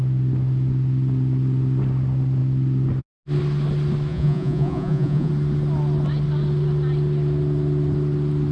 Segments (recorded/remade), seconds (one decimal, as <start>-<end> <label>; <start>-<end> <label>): 0.0-4.1 recorded; 4.1-5.3 remade; 5.3-8.5 recorded